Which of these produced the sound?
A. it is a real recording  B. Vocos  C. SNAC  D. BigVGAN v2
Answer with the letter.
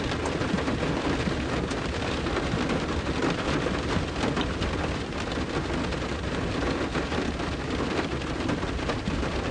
D